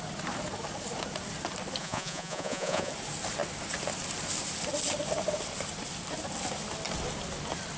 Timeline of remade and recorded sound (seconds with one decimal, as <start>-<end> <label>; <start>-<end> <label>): 0.0-1.8 recorded; 1.8-2.9 remade; 2.9-7.8 recorded